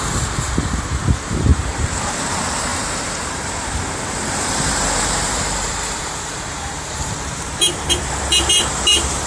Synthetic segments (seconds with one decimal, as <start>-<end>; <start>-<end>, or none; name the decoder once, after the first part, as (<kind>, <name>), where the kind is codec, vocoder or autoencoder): 0.0-9.3 (vocoder, BigVGAN v2)